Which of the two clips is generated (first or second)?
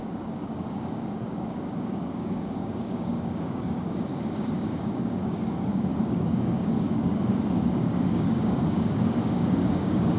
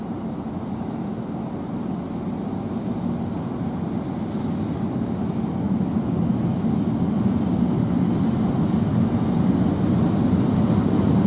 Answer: first